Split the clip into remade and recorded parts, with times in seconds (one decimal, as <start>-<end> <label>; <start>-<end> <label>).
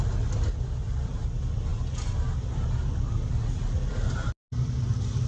0.0-5.3 recorded